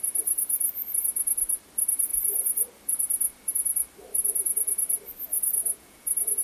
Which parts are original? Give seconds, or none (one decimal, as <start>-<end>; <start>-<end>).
0.0-5.6